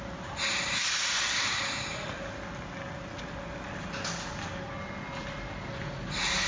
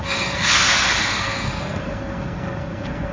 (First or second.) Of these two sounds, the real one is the first